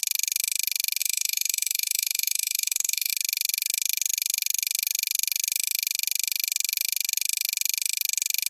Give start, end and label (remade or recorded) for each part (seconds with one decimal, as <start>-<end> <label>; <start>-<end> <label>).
0.0-1.0 recorded; 1.0-3.1 remade; 3.1-8.5 recorded